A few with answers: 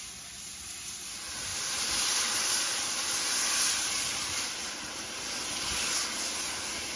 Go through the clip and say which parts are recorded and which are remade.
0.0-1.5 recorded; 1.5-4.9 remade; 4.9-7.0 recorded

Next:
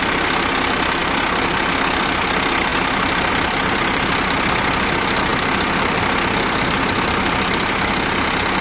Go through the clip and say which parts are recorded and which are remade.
0.0-2.7 recorded; 2.7-3.3 remade; 3.3-5.3 recorded; 5.3-6.0 remade; 6.0-8.6 recorded